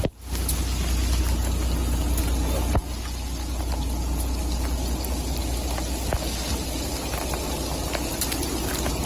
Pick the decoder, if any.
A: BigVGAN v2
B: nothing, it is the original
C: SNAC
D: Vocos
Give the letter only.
B